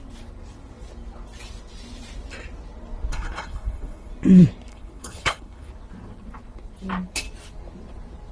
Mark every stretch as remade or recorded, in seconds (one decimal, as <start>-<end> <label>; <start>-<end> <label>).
0.0-3.1 recorded; 3.1-4.1 remade; 4.1-4.7 recorded; 4.7-5.7 remade; 5.7-8.3 recorded